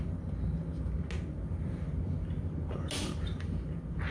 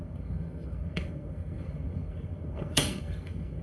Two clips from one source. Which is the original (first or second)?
first